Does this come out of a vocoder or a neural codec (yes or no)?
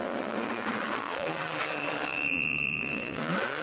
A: yes